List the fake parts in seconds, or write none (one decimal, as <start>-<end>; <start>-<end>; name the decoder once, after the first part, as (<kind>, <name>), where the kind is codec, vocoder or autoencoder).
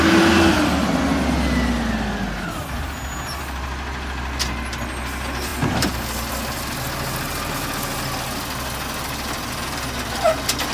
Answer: 5.5-6.3 (vocoder, BigVGAN v2)